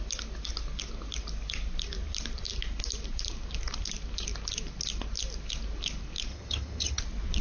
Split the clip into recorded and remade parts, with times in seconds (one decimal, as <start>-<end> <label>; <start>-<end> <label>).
0.0-6.3 recorded; 6.3-7.0 remade; 7.0-7.4 recorded